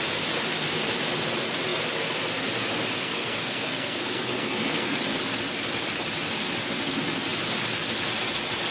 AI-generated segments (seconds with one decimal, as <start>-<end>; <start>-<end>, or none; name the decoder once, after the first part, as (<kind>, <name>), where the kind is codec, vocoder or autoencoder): 3.0-5.0 (codec, SNAC)